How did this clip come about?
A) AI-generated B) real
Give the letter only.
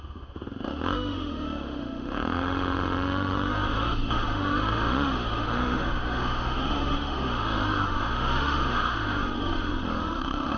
A